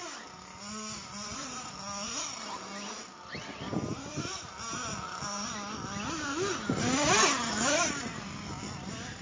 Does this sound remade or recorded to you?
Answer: recorded